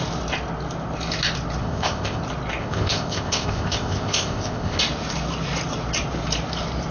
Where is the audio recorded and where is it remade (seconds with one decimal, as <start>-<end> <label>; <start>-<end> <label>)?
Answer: 0.0-1.6 recorded; 1.6-2.2 remade; 2.2-2.6 recorded; 2.6-4.8 remade; 4.8-6.9 recorded